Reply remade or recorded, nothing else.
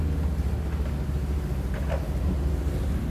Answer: recorded